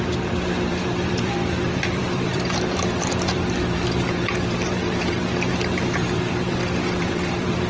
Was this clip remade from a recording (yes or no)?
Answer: yes